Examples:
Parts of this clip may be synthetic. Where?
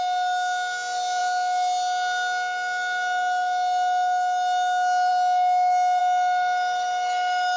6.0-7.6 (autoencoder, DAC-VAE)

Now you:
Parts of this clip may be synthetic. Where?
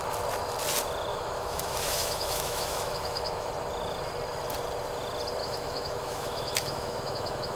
1.1-3.5 (autoencoder, DAC-VAE); 5.4-7.6